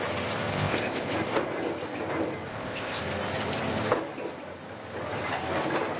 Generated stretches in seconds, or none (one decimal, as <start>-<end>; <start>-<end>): 0.5-1.1; 2.5-3.0